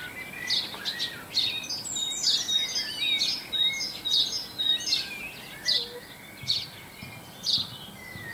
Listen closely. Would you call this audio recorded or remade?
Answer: recorded